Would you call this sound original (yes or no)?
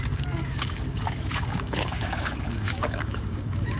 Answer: no